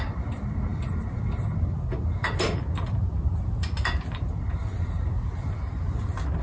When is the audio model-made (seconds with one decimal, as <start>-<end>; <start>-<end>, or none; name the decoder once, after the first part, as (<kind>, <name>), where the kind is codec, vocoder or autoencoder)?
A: none

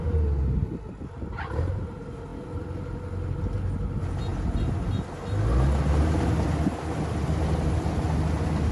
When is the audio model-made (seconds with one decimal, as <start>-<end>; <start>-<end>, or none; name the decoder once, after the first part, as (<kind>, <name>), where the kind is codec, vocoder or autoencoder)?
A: none

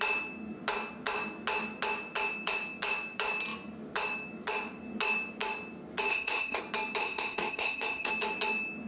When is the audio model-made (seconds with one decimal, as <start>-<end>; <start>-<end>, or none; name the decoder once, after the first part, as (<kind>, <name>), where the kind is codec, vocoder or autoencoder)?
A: 6.1-6.6 (codec, ZipCodec); 7.0-8.1

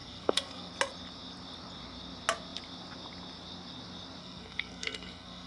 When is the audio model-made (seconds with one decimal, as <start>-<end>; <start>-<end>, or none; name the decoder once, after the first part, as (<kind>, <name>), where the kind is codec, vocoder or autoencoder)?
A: 0.0-0.7 (codec, SNAC); 4.2-5.5

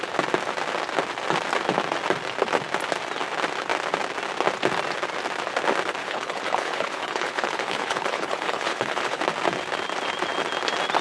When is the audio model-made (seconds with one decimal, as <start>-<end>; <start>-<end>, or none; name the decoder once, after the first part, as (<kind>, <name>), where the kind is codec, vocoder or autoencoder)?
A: 6.0-9.2 (codec, HILCodec)

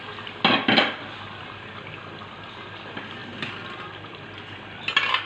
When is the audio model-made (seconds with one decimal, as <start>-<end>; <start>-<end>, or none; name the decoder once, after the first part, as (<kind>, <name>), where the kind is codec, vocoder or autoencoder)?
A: none